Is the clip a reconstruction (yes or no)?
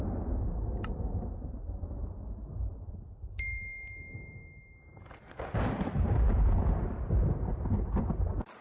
no